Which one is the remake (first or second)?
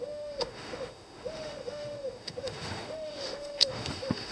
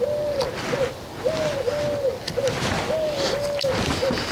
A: first